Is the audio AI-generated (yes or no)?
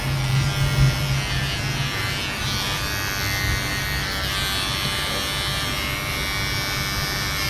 no